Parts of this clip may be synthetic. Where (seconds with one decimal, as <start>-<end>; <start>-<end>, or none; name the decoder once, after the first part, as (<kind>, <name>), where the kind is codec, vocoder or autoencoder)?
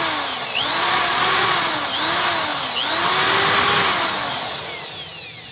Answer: 0.4-1.7 (vocoder, Vocos)